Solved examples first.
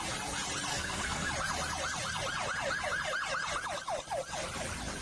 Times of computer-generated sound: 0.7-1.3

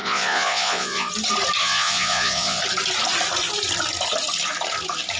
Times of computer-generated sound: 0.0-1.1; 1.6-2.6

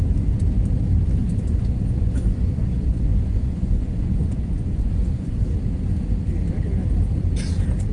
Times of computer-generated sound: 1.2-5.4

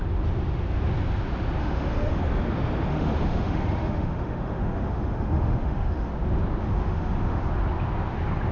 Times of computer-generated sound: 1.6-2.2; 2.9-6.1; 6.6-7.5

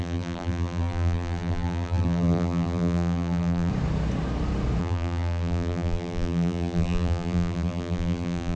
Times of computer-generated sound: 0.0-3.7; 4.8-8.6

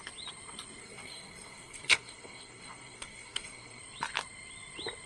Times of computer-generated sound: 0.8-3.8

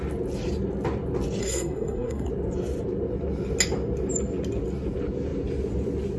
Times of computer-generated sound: 1.4-2.3